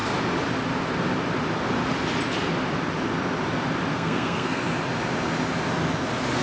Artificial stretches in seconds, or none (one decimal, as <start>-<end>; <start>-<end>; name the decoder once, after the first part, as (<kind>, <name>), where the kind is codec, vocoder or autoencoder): 3.9-4.6 (codec, SNAC)

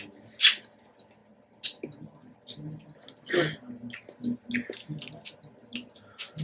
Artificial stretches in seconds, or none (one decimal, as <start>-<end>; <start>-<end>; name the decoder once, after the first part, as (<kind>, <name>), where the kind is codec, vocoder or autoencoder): none

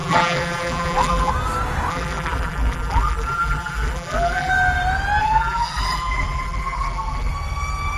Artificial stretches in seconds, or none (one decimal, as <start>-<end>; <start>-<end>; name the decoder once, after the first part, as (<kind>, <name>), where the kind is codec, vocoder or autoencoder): 0.0-1.3 (vocoder, BigVGAN v2); 1.9-4.5; 5.2-7.3

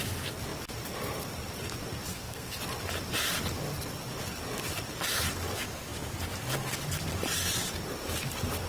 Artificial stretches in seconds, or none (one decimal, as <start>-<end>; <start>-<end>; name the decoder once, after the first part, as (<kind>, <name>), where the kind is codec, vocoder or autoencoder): 2.1-2.6 (codec, SNAC)

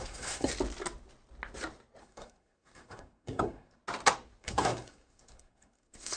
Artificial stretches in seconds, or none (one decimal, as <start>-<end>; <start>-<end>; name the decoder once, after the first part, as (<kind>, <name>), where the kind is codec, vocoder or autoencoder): 0.0-0.5 (codec, SNAC); 2.0-3.8; 4.4-6.2